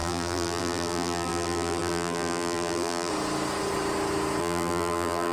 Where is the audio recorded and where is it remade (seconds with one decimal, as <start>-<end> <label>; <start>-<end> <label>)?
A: 0.0-3.1 remade; 3.1-4.4 recorded; 4.4-5.3 remade